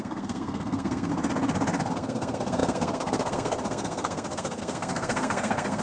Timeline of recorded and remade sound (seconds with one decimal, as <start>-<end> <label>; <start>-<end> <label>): 0.0-1.1 remade; 1.1-1.9 recorded; 1.9-5.8 remade